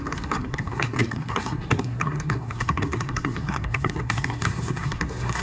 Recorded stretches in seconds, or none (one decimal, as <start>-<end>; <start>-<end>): none